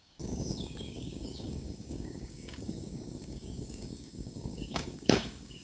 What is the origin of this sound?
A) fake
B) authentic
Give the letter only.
A